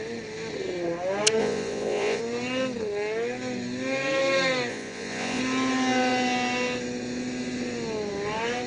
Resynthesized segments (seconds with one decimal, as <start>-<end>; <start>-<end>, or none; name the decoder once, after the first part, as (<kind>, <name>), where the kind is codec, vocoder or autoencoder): 1.4-2.2 (vocoder, Vocos); 4.7-5.4